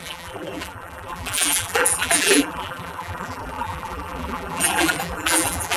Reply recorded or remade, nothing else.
remade